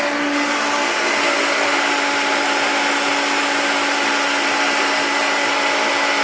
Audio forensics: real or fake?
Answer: real